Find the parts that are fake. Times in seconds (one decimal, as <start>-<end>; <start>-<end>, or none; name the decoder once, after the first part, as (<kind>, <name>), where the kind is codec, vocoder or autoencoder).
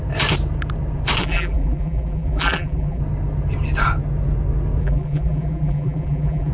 1.2-3.0 (vocoder, BigVGAN v2); 4.8-6.5